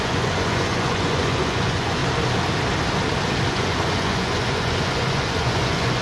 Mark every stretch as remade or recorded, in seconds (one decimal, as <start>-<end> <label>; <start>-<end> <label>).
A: 0.0-2.0 remade; 2.0-3.5 recorded; 3.5-6.0 remade